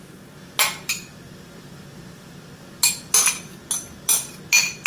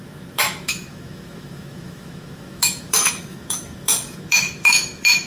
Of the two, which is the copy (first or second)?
second